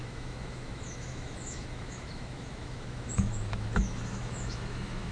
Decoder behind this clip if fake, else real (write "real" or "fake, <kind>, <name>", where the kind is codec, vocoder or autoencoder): fake, autoencoder, DAC-VAE